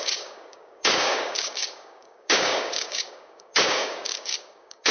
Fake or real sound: fake